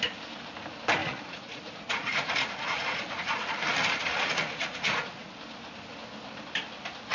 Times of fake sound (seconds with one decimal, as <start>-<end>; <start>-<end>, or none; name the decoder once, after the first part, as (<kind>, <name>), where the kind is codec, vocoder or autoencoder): 1.0-5.3 (vocoder, Vocos)